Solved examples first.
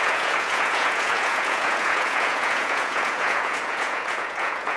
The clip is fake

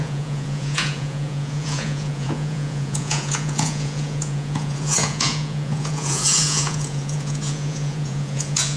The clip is fake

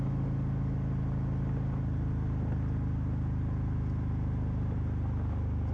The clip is real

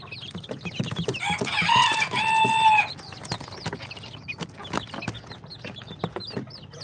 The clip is real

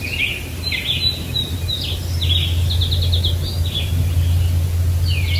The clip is real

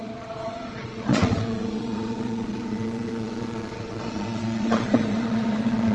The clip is fake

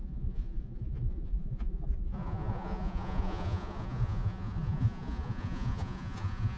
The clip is fake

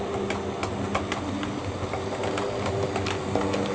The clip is real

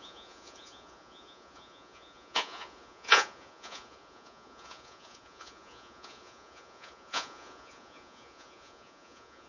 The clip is fake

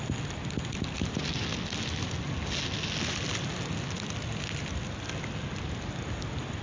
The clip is real